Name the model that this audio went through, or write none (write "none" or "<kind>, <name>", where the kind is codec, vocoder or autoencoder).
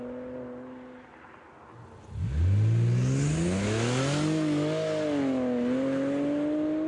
none